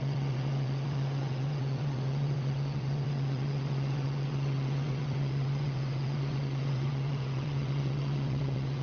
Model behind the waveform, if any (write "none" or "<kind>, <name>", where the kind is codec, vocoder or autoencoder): vocoder, WaveNeXt